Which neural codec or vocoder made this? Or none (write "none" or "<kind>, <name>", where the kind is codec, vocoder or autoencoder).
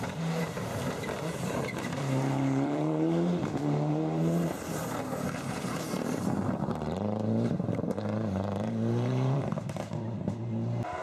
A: vocoder, BigVGAN v2